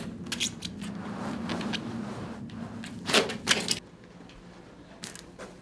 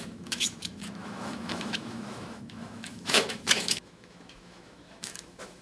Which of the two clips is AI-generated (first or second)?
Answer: second